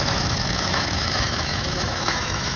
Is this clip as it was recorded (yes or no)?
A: no